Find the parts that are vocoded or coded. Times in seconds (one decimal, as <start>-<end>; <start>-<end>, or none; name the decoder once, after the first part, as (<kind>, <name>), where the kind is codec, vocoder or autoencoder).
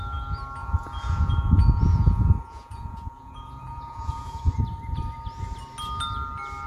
0.6-4.6 (vocoder, Vocos)